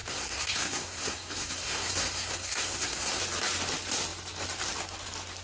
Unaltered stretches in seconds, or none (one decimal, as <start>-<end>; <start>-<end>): 3.2-5.4